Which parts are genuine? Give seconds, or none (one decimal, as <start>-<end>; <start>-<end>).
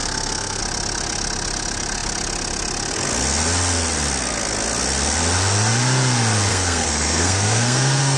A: 0.6-6.5